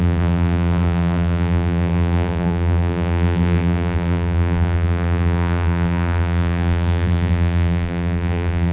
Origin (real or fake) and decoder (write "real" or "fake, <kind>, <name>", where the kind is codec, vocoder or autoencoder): fake, vocoder, BigVGAN v2